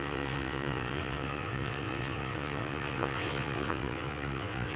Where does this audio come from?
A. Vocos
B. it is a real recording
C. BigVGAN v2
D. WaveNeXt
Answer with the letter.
D